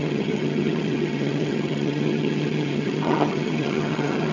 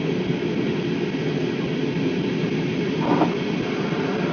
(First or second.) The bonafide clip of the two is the second